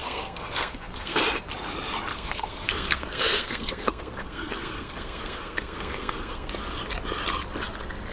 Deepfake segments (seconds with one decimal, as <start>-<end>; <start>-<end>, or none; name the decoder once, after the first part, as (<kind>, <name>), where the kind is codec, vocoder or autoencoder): 0.0-1.2 (codec, SNAC); 2.1-6.5